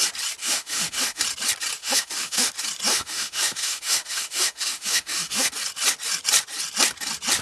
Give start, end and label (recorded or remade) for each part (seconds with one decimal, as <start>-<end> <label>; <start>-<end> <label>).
0.0-0.4 recorded; 0.4-1.2 remade; 1.2-1.8 recorded; 1.8-2.5 remade; 2.5-2.9 recorded; 2.9-5.5 remade; 5.5-7.4 recorded